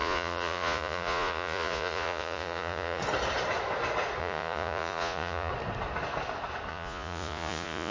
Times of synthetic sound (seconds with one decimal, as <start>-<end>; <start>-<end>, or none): 0.0-3.0; 4.2-5.5; 6.7-7.9